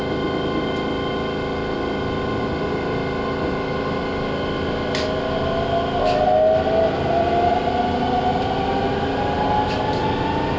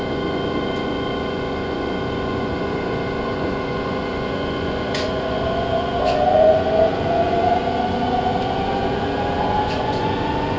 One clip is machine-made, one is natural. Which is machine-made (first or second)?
second